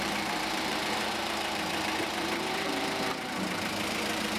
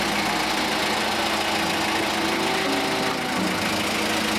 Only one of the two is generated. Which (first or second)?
first